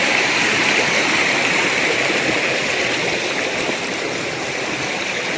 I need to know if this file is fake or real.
real